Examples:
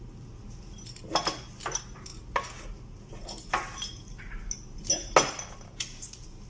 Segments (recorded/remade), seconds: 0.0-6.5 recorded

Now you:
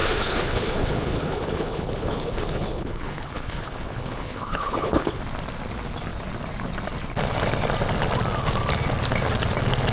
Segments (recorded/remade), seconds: 0.0-5.2 remade; 5.2-9.9 recorded

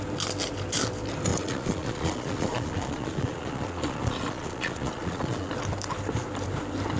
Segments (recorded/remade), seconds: 0.0-1.3 recorded; 1.3-5.5 remade; 5.5-7.0 recorded

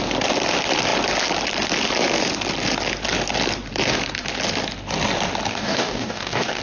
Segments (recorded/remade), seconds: 0.0-5.5 recorded; 5.5-6.6 remade

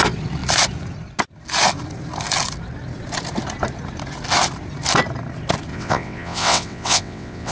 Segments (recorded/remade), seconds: 0.0-5.7 recorded; 5.7-7.5 remade

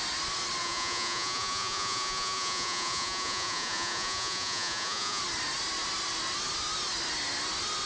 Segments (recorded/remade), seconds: 0.0-0.6 recorded; 0.6-5.2 remade; 5.2-7.9 recorded

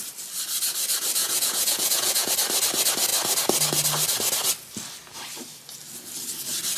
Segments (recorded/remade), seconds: 0.0-1.2 recorded; 1.2-2.3 remade; 2.3-6.8 recorded